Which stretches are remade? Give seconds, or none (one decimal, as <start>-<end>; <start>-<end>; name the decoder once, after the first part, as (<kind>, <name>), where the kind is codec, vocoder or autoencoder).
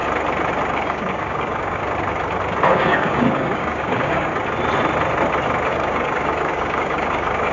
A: 0.7-1.8 (codec, DAC); 2.7-4.3; 5.7-7.5